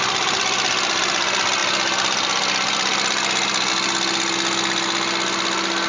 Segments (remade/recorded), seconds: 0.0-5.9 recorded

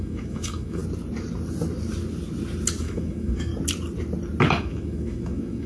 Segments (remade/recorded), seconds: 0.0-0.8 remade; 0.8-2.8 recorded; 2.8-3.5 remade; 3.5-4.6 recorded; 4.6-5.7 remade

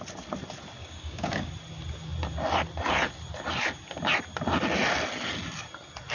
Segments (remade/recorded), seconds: 0.0-0.8 recorded; 0.8-1.5 remade; 1.5-6.1 recorded

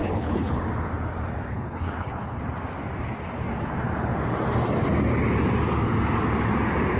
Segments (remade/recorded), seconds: 0.0-0.6 remade; 0.6-1.5 recorded; 1.5-2.4 remade; 2.4-7.0 recorded